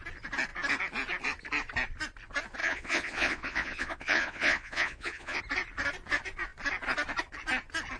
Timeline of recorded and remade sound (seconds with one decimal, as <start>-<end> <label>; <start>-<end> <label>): 0.0-2.6 recorded; 2.6-5.4 remade; 5.4-8.0 recorded